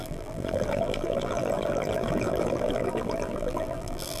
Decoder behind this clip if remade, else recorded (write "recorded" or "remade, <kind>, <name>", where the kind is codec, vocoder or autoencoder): remade, vocoder, BigVGAN v2